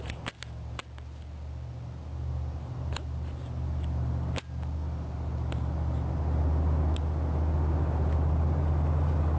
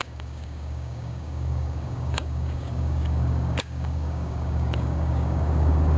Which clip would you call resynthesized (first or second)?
second